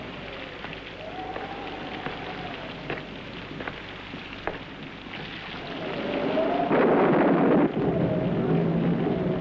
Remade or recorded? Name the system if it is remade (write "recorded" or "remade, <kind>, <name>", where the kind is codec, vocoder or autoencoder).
recorded